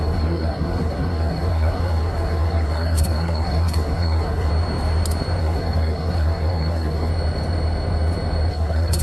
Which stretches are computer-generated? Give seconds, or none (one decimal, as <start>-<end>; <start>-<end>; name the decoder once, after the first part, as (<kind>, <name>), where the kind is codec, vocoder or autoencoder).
0.0-4.5 (codec, SNAC); 5.4-7.1; 8.5-9.0